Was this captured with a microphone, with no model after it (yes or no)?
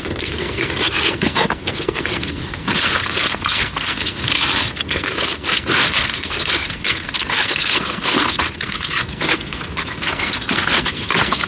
no